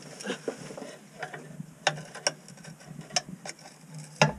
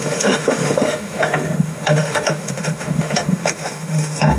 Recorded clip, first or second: first